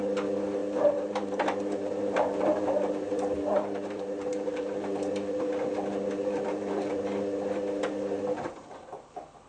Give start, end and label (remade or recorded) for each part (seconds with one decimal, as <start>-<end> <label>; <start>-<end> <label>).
0.0-0.6 recorded; 0.6-5.4 remade; 5.4-6.2 recorded; 6.2-6.9 remade; 6.9-9.5 recorded